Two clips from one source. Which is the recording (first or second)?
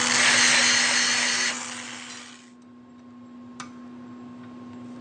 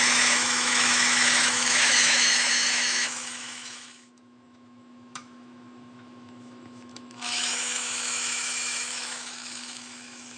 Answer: first